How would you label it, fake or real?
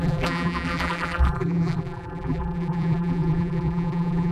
fake